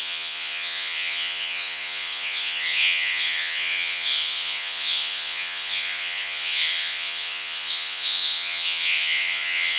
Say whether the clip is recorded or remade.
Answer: remade